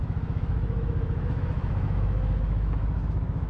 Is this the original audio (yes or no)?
no